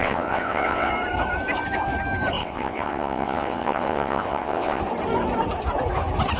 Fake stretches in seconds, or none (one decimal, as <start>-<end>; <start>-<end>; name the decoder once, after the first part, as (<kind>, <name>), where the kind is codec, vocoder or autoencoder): 0.0-0.9 (vocoder, WaveNeXt); 2.4-4.8